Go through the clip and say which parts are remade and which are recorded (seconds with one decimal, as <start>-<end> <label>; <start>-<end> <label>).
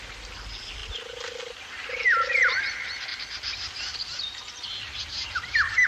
0.0-5.9 recorded